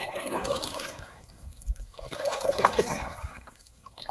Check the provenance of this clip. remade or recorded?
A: remade